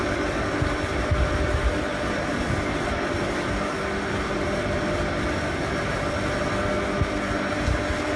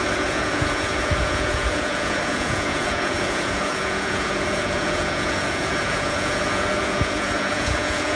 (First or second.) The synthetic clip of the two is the second